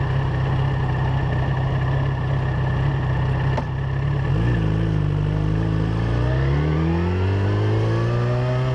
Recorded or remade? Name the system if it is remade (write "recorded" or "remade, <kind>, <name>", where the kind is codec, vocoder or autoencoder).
recorded